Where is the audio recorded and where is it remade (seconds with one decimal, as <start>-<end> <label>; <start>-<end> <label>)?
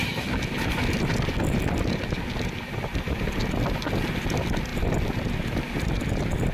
0.0-6.5 recorded